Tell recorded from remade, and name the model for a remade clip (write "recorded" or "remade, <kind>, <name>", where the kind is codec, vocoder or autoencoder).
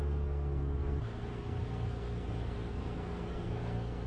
remade, codec, SNAC